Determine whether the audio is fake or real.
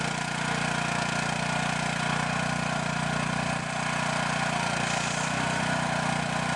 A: real